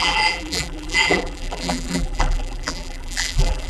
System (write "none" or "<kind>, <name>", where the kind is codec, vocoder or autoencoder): vocoder, BigVGAN v2